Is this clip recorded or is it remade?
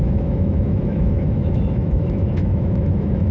remade